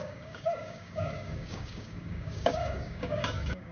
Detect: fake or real fake